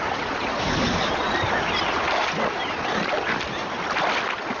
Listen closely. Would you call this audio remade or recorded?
recorded